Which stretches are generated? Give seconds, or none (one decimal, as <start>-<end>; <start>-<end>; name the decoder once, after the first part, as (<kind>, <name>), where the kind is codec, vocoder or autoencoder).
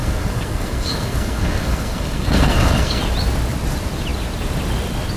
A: 0.0-3.0 (codec, SNAC)